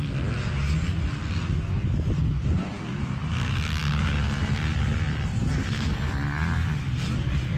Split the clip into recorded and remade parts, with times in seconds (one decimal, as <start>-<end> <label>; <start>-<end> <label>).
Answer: 0.0-5.6 recorded; 5.6-6.1 remade; 6.1-7.6 recorded